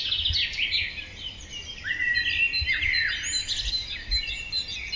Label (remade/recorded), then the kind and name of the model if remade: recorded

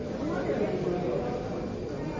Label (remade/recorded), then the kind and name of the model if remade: recorded